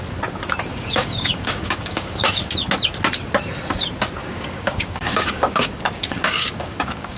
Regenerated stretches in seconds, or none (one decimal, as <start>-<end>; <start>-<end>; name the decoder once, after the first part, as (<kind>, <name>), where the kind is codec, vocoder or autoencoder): 0.7-2.4 (codec, DAC); 4.2-7.2